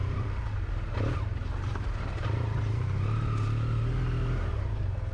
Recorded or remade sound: recorded